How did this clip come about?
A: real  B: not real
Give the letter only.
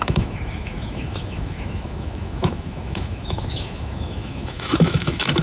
B